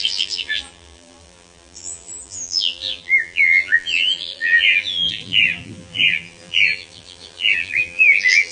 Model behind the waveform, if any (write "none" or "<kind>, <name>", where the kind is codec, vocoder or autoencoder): vocoder, BigVGAN v2